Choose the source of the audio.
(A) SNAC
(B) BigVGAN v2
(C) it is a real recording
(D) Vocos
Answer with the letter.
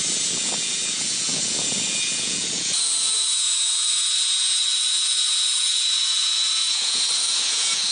D